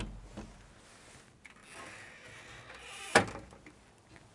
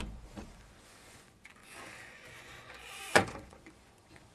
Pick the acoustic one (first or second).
first